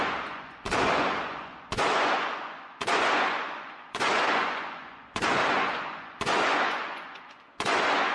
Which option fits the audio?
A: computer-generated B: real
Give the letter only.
A